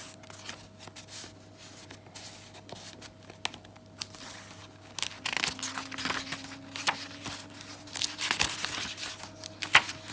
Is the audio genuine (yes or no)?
yes